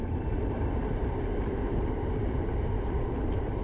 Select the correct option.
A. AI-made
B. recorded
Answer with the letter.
A